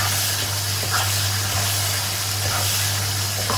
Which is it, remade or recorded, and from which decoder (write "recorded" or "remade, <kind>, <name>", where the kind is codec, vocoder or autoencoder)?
recorded